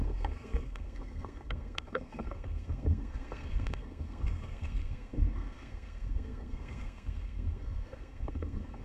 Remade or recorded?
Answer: remade